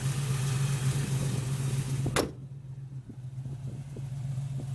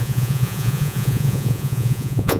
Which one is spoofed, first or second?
second